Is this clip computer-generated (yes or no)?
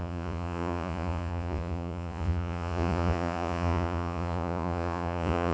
yes